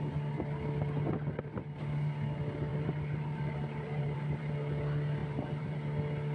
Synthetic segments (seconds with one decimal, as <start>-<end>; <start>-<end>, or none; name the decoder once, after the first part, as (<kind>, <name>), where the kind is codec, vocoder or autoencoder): 2.7-4.5 (vocoder, BigVGAN v2); 5.2-5.8